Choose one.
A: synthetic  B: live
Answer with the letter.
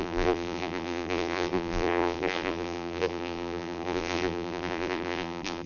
A